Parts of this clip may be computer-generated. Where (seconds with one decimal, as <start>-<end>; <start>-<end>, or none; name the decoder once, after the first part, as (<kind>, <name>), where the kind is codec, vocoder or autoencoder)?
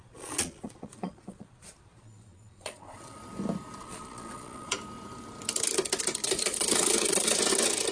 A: 0.0-3.2 (vocoder, Vocos); 3.8-4.7; 6.2-7.5